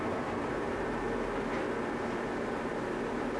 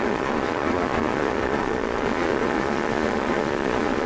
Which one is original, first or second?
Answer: first